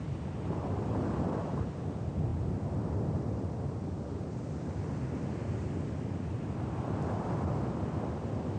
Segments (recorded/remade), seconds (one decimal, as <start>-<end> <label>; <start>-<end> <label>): 0.0-8.6 recorded